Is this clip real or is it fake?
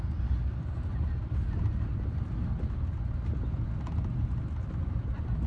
real